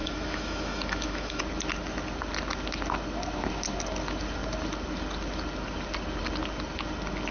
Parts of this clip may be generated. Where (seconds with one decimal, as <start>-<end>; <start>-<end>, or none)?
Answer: 0.0-1.4